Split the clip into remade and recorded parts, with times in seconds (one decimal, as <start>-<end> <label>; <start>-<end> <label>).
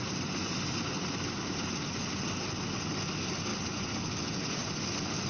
0.0-5.3 recorded